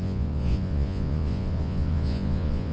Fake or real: fake